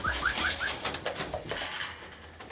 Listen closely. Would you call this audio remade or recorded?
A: recorded